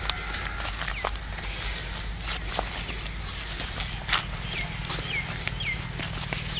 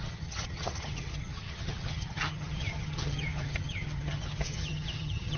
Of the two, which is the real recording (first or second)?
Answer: first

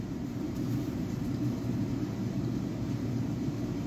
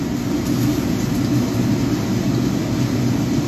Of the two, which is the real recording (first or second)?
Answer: second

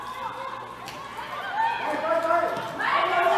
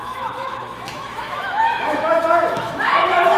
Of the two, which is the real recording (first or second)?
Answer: first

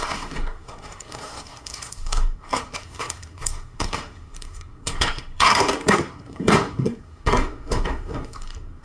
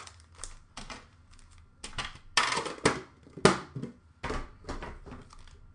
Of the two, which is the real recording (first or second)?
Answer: second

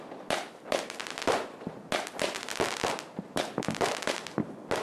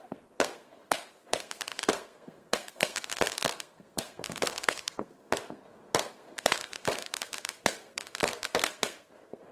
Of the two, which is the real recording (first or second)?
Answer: first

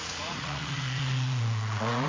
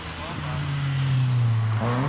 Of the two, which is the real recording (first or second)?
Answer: second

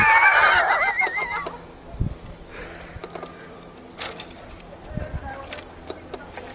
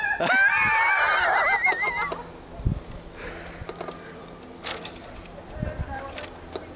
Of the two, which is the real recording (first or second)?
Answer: second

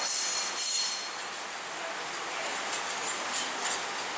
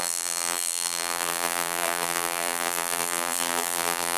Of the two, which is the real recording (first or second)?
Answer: first